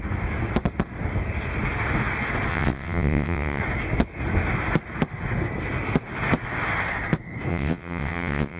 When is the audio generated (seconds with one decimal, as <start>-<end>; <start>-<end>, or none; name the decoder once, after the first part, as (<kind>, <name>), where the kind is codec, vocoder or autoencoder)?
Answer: 2.5-3.6 (vocoder, WaveNeXt); 7.5-8.6

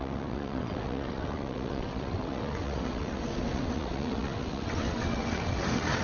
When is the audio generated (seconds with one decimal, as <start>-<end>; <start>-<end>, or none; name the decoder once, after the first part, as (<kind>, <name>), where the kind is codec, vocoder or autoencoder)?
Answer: 0.0-6.0 (vocoder, WaveNeXt)

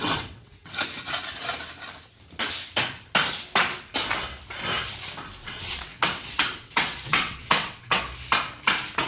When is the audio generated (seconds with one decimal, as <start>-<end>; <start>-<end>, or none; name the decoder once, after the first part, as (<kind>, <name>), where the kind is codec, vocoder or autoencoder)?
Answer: 0.0-0.8 (vocoder, WaveNeXt); 5.4-8.0

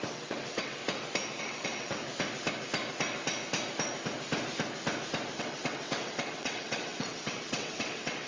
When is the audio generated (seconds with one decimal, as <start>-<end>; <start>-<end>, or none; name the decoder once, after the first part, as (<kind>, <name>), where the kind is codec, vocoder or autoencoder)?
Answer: 0.0-0.8 (vocoder, WaveNeXt); 1.4-2.0; 5.4-8.3

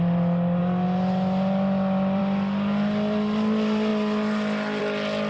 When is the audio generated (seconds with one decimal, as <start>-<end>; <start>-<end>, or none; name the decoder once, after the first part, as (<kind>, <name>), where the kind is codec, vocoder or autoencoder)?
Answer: none

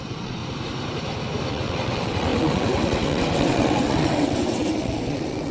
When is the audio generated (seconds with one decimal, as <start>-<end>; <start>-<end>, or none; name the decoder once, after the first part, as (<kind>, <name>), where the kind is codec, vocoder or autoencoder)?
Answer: 0.0-0.4 (vocoder, WaveNeXt); 1.5-5.5

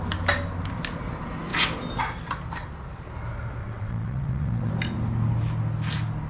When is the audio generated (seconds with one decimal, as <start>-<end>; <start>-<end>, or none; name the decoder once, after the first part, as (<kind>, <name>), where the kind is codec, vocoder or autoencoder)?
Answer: 3.6-4.7 (vocoder, WaveNeXt)